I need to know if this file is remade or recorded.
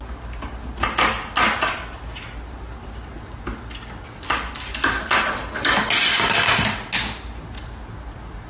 recorded